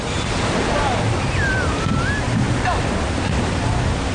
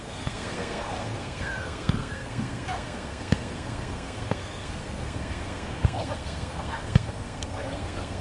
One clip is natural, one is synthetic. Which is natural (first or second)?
first